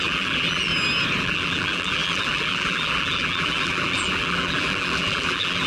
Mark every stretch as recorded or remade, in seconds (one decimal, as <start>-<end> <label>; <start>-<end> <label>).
0.0-0.7 remade; 0.7-1.2 recorded; 1.2-5.7 remade